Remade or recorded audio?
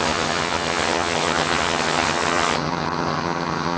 remade